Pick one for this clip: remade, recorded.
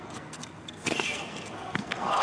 remade